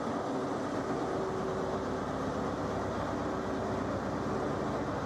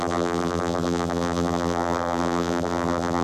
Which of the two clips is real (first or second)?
first